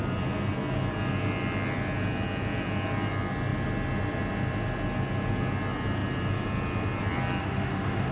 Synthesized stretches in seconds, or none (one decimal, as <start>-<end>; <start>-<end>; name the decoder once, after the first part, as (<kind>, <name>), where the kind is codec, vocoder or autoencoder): 7.4-8.1 (autoencoder, DAC-VAE)